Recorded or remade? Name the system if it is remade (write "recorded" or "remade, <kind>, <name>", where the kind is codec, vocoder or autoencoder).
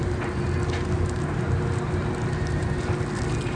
recorded